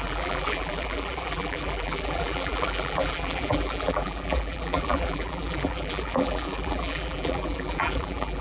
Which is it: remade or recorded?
remade